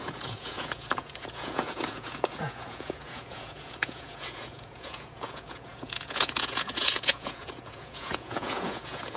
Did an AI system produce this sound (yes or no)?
yes